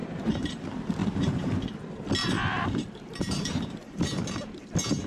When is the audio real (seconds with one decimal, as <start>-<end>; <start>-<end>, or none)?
0.6-1.0; 1.5-2.2; 4.2-5.1